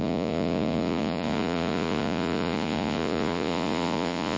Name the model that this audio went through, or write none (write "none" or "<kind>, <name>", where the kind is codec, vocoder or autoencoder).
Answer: vocoder, Vocos